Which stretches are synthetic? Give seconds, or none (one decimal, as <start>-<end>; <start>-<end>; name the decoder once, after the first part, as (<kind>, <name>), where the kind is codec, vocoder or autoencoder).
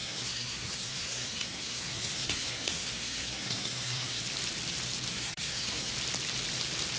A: 0.0-4.2 (codec, SNAC); 5.1-5.9